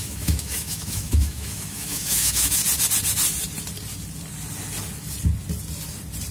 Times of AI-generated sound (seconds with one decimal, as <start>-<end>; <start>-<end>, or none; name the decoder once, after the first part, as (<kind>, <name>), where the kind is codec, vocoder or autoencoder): 0.0-2.6 (autoencoder, DAC-VAE)